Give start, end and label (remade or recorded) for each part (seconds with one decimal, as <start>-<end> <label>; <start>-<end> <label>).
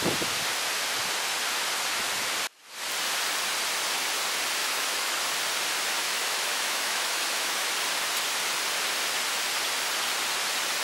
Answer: 0.0-4.6 recorded; 4.6-5.2 remade; 5.2-6.0 recorded; 6.0-7.7 remade; 7.7-10.8 recorded